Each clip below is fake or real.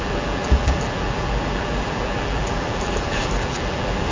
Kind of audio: fake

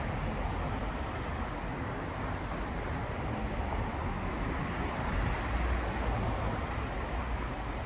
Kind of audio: real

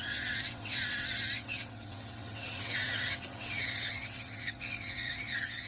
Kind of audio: fake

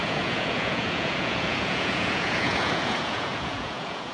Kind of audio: fake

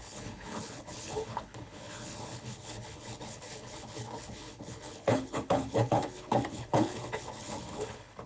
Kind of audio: fake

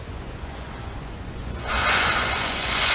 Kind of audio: fake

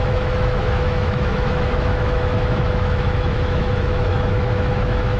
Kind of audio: fake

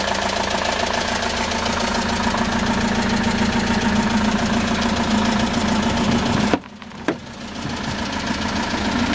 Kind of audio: real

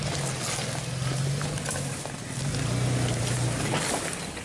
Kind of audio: real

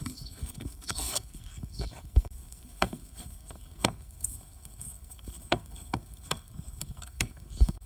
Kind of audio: fake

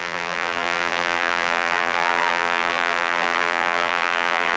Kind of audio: fake